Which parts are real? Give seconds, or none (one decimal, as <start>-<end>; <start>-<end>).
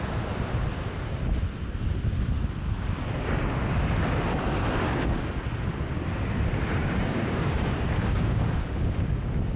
0.0-6.8; 9.2-9.6